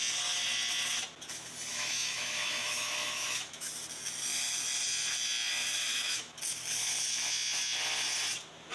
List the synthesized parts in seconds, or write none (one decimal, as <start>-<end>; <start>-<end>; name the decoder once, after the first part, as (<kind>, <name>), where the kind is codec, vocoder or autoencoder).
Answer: 1.7-3.7 (autoencoder, DAC-VAE); 5.9-6.4